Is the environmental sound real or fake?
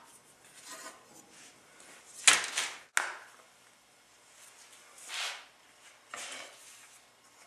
real